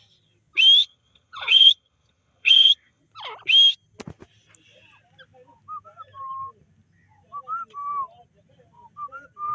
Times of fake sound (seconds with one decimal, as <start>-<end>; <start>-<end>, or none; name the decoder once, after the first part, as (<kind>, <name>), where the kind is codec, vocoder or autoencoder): 0.8-3.0 (vocoder, HiFi-GAN)